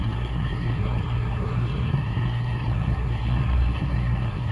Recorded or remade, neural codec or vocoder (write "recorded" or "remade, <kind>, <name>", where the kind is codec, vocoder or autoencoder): remade, codec, SNAC